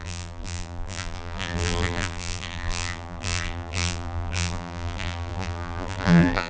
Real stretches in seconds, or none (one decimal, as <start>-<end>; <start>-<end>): none